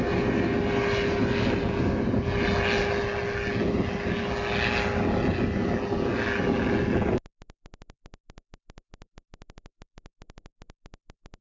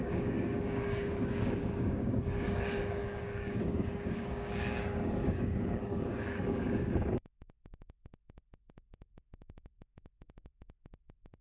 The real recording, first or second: first